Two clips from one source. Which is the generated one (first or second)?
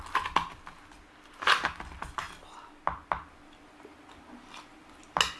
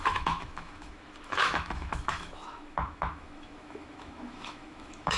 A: second